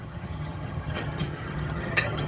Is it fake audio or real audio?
fake